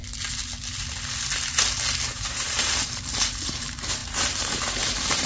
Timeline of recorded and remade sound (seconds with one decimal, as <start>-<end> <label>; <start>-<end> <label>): 0.0-2.1 recorded; 2.1-5.3 remade